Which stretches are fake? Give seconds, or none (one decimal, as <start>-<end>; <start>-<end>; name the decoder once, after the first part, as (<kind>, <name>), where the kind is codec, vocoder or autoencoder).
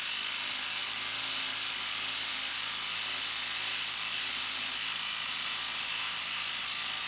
none